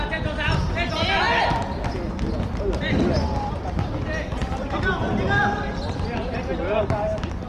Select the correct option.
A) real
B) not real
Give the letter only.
A